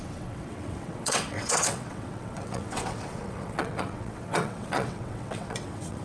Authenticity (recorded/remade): remade